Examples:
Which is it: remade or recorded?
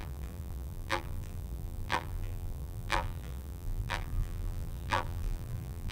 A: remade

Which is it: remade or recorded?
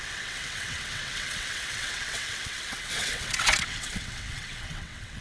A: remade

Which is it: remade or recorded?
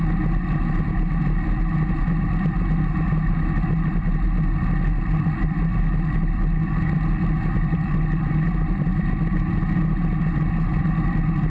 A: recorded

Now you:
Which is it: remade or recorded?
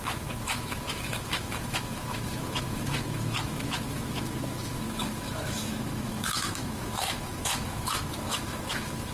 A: remade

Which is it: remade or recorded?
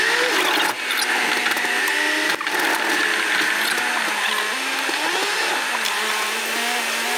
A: recorded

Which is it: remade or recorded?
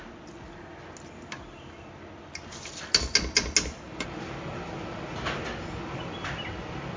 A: recorded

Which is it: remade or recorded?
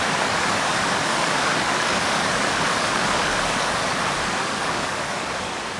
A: remade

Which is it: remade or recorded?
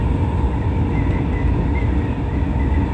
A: recorded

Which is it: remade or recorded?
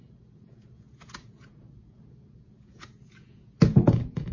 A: remade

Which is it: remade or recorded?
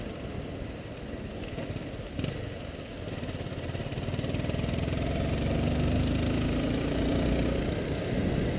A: recorded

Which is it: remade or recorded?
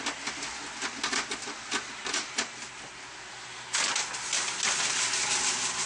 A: recorded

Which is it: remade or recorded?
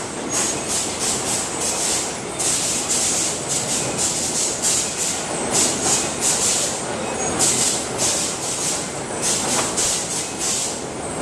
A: recorded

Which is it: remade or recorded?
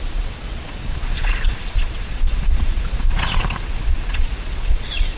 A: remade